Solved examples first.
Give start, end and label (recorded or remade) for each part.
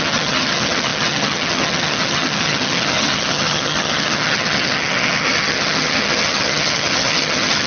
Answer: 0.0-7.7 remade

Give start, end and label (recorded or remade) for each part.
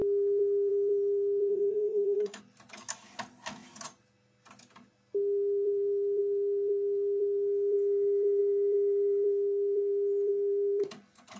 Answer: 0.0-1.5 recorded; 1.5-2.4 remade; 2.4-11.4 recorded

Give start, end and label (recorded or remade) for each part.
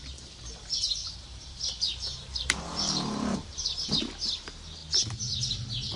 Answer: 0.0-1.0 recorded; 1.0-4.0 remade; 4.0-6.0 recorded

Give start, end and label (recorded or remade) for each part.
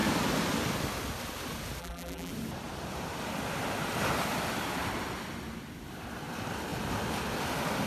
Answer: 0.0-1.8 recorded; 1.8-2.3 remade; 2.3-7.9 recorded